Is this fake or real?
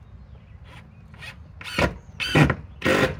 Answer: real